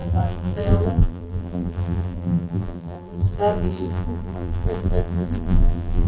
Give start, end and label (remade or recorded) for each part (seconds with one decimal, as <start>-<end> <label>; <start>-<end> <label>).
0.0-6.1 remade